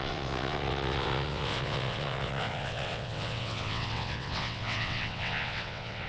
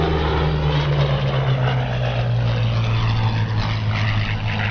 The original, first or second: second